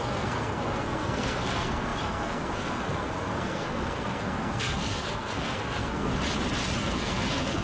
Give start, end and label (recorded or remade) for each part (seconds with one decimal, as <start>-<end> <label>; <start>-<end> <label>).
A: 0.0-6.1 remade; 6.1-6.8 recorded; 6.8-7.6 remade